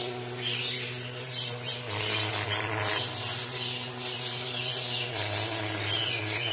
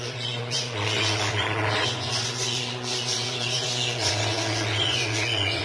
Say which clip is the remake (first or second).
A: second